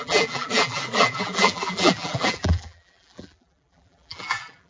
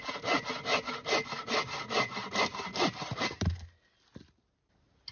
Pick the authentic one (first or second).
second